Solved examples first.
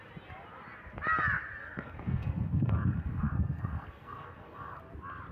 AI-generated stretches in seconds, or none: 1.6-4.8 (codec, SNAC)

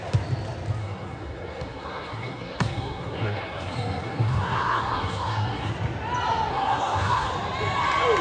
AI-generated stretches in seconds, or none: 0.8-5.7 (codec, SNAC); 6.5-7.3